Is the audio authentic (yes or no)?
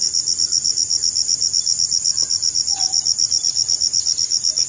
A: yes